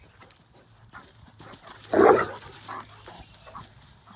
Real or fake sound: real